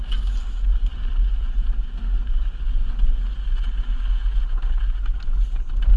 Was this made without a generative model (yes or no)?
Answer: yes